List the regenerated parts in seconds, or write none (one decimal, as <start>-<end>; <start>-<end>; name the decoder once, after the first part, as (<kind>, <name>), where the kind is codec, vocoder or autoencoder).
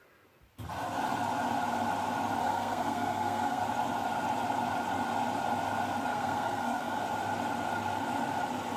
2.4-3.6 (codec, SNAC); 6.1-7.0